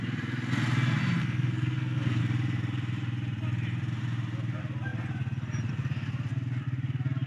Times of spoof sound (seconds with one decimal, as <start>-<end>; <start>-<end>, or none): 1.2-2.2